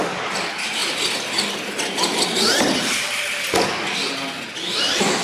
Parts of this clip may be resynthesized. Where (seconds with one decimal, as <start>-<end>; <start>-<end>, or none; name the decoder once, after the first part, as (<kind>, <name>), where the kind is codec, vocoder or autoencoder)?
none